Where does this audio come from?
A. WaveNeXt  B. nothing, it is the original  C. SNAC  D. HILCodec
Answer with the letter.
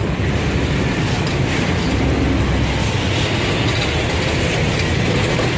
B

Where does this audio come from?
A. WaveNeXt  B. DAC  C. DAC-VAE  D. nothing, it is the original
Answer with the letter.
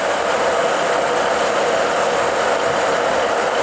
D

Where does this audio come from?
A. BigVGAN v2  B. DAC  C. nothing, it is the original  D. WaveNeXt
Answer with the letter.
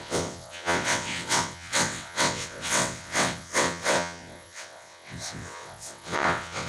D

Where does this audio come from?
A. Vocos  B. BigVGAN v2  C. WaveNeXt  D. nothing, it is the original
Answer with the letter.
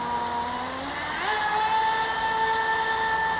D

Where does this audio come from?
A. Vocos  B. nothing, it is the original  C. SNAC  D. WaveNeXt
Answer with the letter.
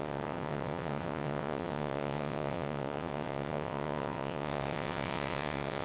D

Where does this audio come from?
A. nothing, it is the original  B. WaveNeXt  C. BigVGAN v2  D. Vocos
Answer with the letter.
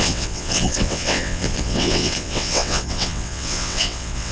B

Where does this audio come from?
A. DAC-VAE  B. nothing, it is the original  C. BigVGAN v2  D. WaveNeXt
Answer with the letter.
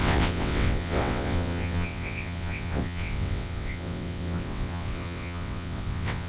D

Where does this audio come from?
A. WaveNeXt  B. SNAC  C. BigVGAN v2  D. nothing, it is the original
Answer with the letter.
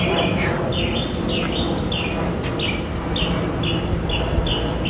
D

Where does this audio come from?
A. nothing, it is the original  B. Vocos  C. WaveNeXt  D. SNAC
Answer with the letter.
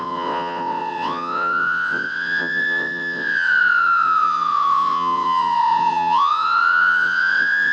C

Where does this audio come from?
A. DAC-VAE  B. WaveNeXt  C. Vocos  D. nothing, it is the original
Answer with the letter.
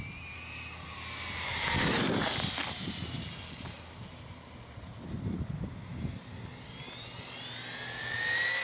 D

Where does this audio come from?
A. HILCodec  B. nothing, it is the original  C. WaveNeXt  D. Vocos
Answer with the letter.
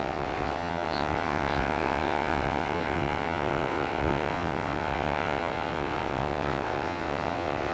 C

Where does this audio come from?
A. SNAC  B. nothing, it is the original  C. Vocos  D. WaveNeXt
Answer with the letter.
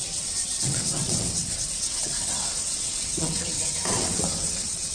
D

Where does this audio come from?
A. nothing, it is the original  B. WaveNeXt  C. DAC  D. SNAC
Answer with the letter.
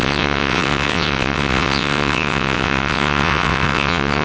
B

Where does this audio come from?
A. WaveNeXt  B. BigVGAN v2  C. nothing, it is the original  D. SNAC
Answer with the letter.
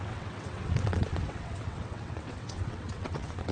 A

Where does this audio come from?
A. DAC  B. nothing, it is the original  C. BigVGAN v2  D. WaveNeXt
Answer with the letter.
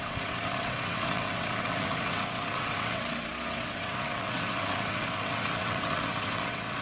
D